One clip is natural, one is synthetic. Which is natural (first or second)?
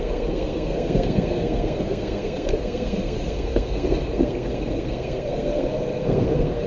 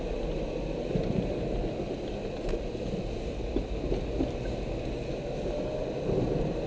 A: second